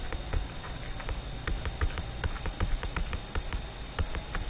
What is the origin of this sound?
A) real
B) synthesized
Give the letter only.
A